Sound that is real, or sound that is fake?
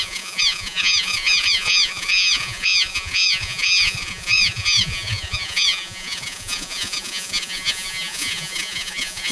fake